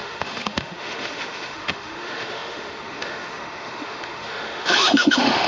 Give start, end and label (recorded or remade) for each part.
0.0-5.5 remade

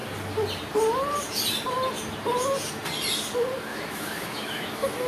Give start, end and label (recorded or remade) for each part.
0.0-3.7 recorded; 3.7-5.1 remade